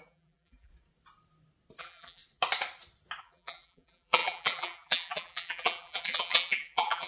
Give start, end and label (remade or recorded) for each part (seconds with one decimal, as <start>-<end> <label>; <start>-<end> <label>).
0.0-0.7 remade; 0.7-1.8 recorded; 1.8-2.2 remade; 2.2-3.2 recorded; 3.2-7.1 remade